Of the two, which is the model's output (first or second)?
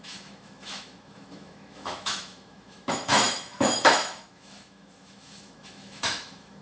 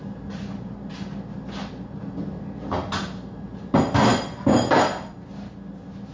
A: first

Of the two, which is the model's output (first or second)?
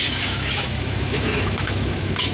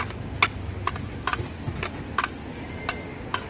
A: first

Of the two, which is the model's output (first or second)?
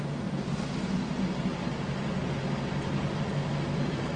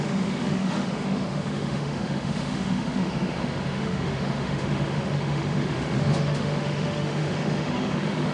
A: second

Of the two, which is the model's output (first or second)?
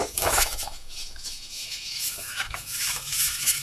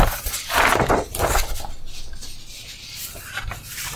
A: first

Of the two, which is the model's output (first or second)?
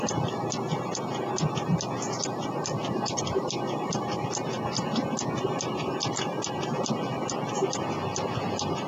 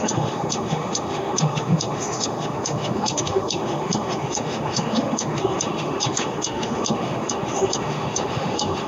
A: second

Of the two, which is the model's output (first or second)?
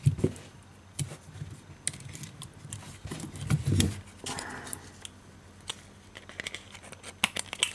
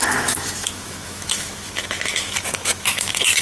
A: second